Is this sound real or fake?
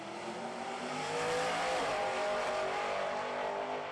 real